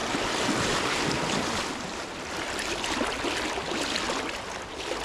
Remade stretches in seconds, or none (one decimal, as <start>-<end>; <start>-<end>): none